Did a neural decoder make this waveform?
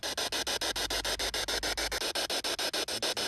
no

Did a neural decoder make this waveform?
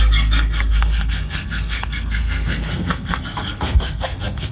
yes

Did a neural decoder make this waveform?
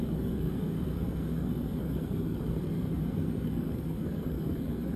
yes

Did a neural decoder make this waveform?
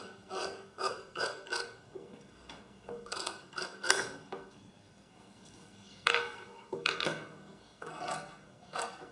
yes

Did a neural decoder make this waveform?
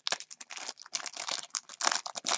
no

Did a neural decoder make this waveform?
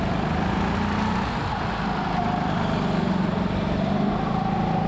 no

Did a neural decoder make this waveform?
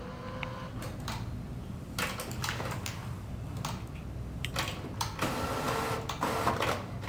no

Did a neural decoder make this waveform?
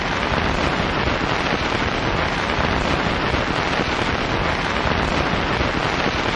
no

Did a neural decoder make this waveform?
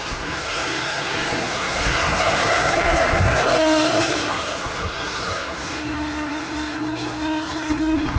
yes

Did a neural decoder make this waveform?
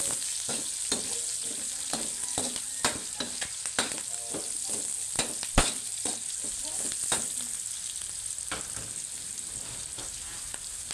no